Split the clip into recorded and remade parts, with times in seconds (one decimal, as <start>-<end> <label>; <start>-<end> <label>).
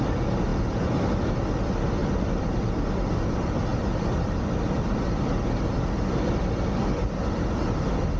0.0-0.5 recorded; 0.5-1.3 remade; 1.3-2.0 recorded; 2.0-2.6 remade; 2.6-8.2 recorded